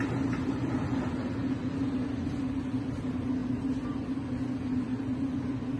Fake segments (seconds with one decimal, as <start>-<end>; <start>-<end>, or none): none